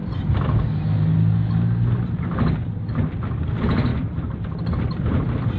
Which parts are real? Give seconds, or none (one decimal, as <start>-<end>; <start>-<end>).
0.0-3.9